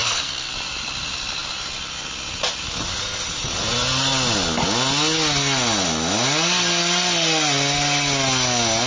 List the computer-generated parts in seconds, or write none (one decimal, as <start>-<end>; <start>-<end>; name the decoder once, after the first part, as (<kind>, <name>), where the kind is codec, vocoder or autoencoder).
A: 0.0-0.5 (codec, SNAC)